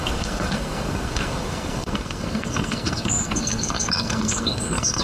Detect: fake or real fake